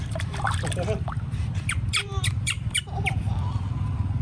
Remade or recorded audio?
remade